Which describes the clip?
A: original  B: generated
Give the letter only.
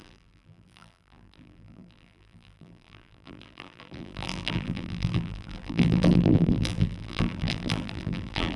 B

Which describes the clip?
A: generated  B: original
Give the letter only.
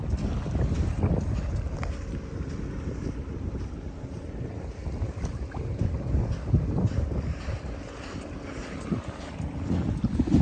B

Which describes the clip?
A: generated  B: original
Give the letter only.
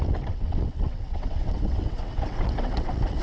A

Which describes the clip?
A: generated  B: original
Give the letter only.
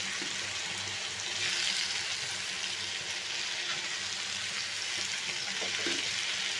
B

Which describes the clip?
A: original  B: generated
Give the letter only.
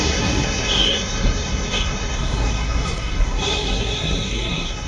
B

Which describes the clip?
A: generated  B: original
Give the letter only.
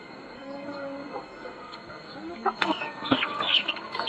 A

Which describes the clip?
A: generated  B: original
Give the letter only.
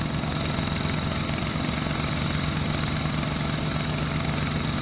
B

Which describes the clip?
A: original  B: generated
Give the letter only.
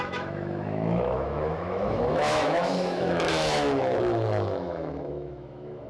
B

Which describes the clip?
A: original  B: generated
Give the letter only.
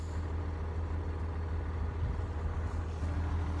A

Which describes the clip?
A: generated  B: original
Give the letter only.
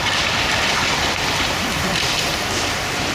A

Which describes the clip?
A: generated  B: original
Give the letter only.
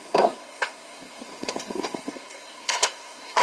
A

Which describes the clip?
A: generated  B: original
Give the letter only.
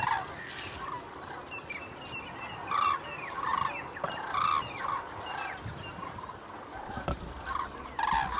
B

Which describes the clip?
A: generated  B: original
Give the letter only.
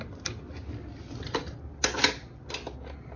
B